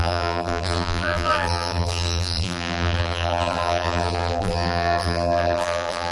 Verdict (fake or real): fake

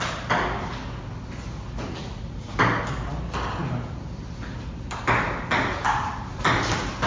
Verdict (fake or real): real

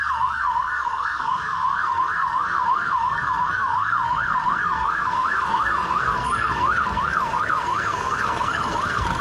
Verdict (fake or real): fake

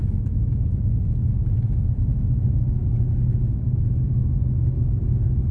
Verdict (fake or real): fake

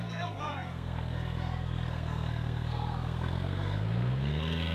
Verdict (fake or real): fake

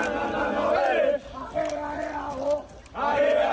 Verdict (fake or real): real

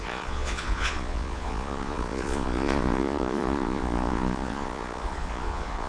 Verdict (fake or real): fake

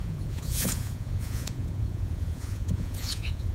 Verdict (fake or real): fake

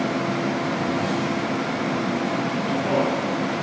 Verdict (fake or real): real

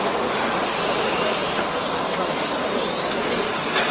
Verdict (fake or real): real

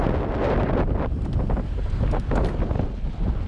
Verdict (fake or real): real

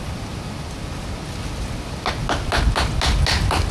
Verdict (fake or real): real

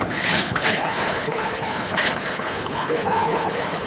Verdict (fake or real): fake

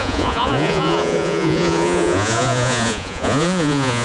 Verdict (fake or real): fake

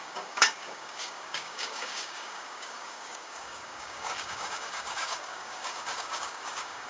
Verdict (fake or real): fake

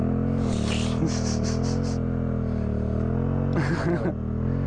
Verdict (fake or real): real